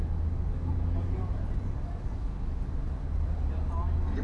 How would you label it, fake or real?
real